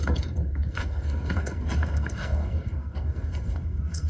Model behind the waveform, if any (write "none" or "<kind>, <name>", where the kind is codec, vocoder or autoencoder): codec, SNAC